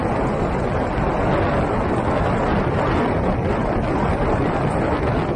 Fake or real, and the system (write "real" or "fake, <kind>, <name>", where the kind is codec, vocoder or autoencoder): real